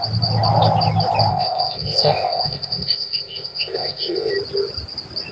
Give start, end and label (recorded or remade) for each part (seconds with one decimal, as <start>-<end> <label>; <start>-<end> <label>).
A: 0.0-1.3 recorded; 1.3-4.3 remade; 4.3-5.3 recorded